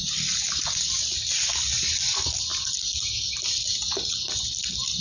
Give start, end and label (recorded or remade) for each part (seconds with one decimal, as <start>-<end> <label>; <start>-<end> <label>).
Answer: 0.0-5.0 recorded

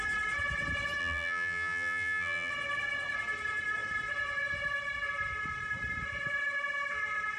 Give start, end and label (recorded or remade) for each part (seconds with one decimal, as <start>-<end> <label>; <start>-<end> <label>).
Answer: 0.0-1.0 recorded; 1.0-2.5 remade; 2.5-7.4 recorded